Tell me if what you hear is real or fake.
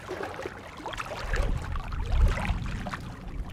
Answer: real